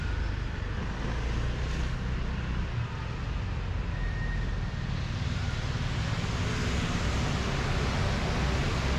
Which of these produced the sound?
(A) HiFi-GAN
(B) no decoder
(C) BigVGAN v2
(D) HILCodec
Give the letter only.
B